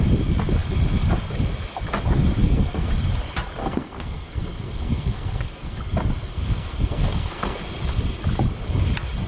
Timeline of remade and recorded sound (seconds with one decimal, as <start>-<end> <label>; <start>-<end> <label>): 0.0-2.4 recorded; 2.4-2.9 remade; 2.9-3.6 recorded; 3.6-5.8 remade; 5.8-6.3 recorded; 6.3-7.6 remade; 7.6-9.3 recorded

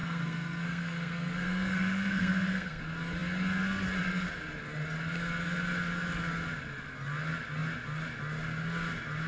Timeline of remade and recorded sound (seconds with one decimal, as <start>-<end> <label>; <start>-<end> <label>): 0.0-2.8 remade; 2.8-9.3 recorded

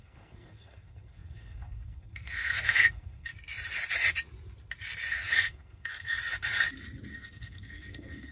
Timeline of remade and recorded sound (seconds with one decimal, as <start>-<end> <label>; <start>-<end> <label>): 0.0-3.3 remade; 3.3-5.1 recorded; 5.1-6.2 remade; 6.2-7.1 recorded; 7.1-8.3 remade

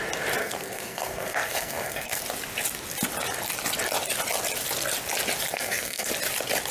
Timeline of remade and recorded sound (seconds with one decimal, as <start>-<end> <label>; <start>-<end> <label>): 0.0-0.4 recorded; 0.4-2.2 remade; 2.2-5.5 recorded; 5.5-6.1 remade; 6.1-6.7 recorded

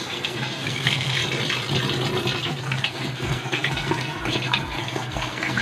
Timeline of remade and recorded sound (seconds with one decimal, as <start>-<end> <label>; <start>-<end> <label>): 0.0-1.2 remade; 1.2-2.4 recorded; 2.4-5.6 remade

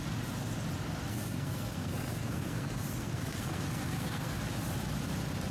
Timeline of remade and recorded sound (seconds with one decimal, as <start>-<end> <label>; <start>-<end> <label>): 0.0-1.1 recorded; 1.1-4.4 remade; 4.4-5.5 recorded